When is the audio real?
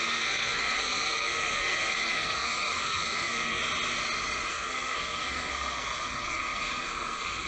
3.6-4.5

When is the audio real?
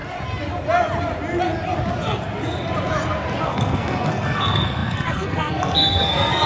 0.0-3.4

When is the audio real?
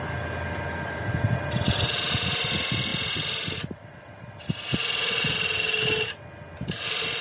0.0-7.2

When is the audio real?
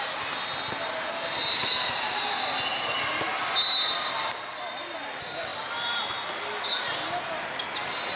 0.0-8.2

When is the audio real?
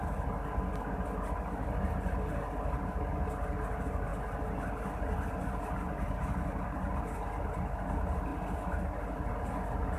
0.0-10.0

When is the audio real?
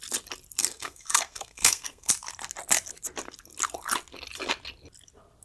0.0-0.7; 2.1-5.4